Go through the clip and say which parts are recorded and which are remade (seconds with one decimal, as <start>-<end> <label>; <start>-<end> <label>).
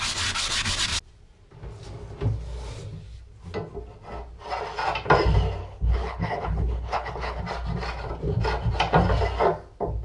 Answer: 0.0-5.6 recorded; 5.6-7.4 remade; 7.4-10.0 recorded